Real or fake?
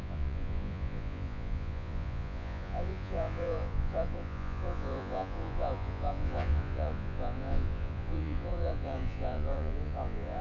fake